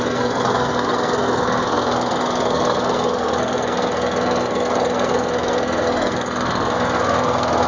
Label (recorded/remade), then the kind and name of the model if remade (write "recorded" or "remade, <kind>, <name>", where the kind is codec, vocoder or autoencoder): remade, codec, SNAC